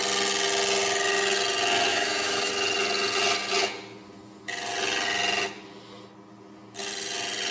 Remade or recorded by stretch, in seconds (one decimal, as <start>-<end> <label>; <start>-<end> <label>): 0.0-1.9 recorded; 1.9-2.5 remade; 2.5-7.5 recorded